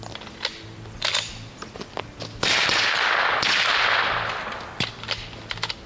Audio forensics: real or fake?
real